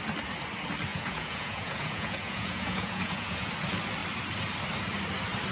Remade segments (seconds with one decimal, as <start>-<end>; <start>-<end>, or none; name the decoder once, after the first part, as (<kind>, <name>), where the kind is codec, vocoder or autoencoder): 0.9-3.5 (vocoder, Vocos)